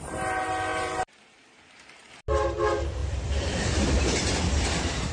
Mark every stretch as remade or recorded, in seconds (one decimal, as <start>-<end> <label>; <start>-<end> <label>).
0.0-0.7 recorded; 0.7-2.1 remade; 2.1-3.0 recorded; 3.0-4.2 remade; 4.2-5.1 recorded